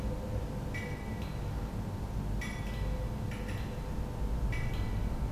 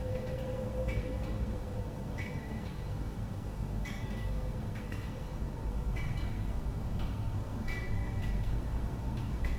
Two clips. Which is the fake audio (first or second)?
second